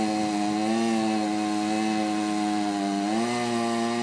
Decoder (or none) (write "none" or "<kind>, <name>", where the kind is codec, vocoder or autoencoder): none